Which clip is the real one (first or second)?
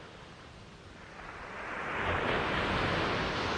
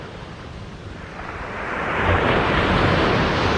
first